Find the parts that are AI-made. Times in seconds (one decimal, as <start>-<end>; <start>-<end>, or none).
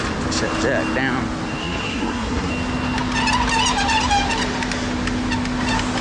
1.6-2.5